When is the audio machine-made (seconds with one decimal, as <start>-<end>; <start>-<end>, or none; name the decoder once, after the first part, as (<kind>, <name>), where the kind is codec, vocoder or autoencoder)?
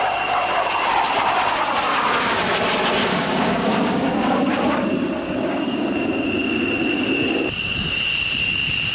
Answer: 1.9-2.5 (codec, DAC); 3.1-5.9